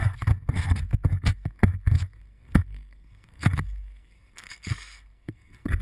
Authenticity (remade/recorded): remade